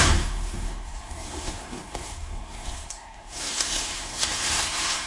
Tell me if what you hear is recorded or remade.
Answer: remade